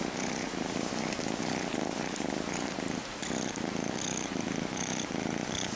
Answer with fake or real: real